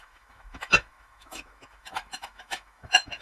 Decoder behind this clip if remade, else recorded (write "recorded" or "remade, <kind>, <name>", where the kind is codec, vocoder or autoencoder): remade, autoencoder, DAC-VAE